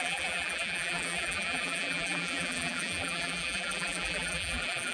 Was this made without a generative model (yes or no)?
no